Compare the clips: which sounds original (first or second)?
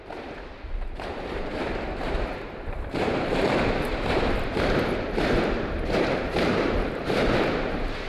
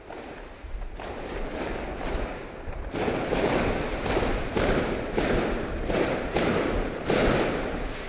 second